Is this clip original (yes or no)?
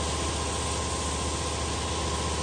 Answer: yes